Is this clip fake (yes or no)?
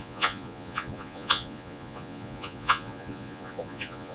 yes